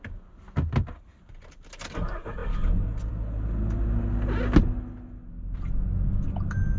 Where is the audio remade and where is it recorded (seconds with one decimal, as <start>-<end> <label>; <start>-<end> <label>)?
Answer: 0.0-6.8 recorded

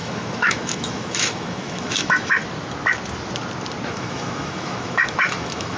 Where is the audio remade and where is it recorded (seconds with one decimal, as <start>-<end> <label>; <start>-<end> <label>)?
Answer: 0.0-2.4 remade; 2.4-3.9 recorded; 3.9-5.8 remade